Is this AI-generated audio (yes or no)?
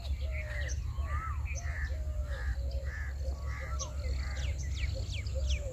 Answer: no